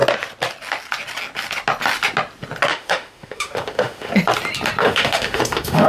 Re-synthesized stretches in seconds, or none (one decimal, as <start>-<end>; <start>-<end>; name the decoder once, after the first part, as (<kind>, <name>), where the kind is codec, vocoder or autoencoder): 2.7-4.1 (autoencoder, DAC-VAE); 4.8-5.9